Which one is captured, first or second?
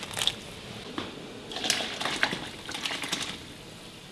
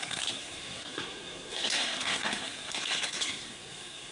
first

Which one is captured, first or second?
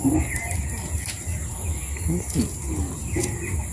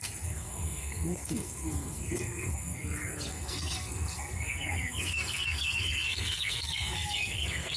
first